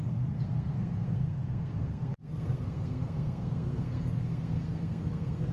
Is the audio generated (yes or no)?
yes